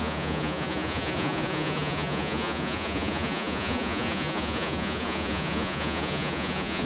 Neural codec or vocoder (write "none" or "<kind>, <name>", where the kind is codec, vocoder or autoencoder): vocoder, Vocos